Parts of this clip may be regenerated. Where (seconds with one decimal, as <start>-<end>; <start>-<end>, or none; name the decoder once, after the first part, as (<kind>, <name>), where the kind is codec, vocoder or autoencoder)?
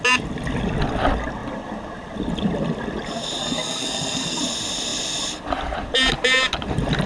3.4-4.4 (codec, SNAC)